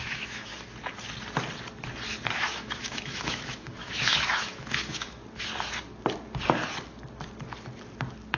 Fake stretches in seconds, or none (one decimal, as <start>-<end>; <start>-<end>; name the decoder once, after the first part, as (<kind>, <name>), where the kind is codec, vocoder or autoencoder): 0.0-0.5 (autoencoder, DAC-VAE); 2.3-5.2